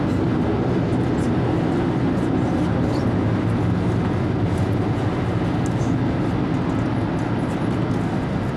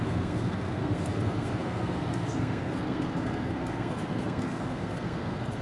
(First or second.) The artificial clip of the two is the second